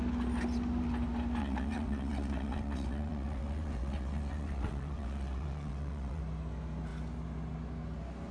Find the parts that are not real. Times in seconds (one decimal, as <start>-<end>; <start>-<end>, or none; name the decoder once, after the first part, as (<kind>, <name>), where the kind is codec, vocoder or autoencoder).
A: 1.4-6.2 (vocoder, WaveNeXt)